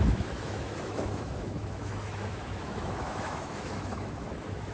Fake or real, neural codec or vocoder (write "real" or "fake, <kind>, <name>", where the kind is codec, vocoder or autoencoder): fake, autoencoder, DAC-VAE